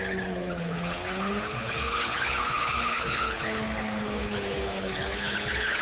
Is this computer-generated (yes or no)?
yes